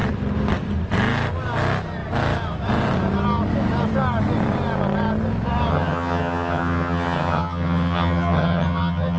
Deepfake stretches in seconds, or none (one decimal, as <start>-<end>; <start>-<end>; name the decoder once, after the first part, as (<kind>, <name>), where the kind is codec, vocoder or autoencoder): 5.7-9.2 (vocoder, HiFi-GAN)